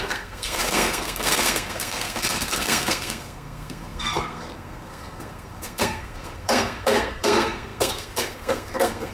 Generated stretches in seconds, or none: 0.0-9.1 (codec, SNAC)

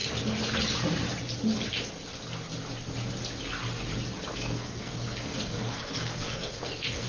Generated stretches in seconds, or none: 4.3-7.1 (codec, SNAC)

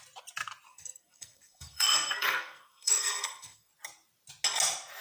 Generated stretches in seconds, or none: 0.7-3.7 (codec, SNAC)

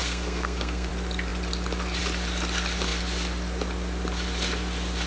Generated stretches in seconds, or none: 0.0-0.9 (codec, SNAC)

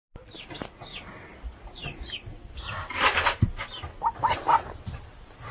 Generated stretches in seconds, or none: none

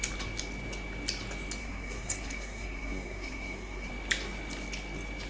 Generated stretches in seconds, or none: 1.6-3.9 (codec, SNAC)

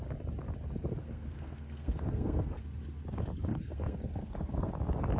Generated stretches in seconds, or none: 1.0-2.6 (codec, SNAC); 3.5-4.7

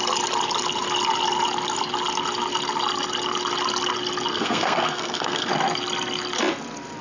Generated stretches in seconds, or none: 4.3-5.5 (codec, SNAC)